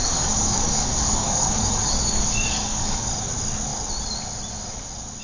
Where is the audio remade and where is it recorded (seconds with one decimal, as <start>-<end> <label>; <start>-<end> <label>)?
0.0-3.1 remade; 3.1-5.2 recorded